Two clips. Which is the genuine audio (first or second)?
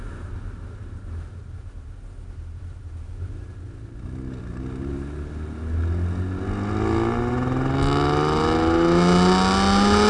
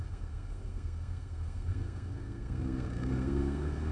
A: first